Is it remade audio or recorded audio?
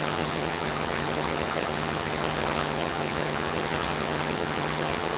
remade